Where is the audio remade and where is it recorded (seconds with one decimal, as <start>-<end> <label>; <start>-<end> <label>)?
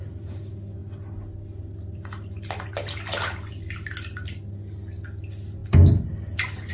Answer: 0.0-6.7 recorded